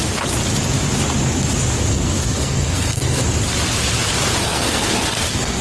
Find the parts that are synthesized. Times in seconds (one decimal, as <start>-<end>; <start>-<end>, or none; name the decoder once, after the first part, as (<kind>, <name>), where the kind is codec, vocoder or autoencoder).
1.9-3.2 (codec, SNAC); 4.4-5.6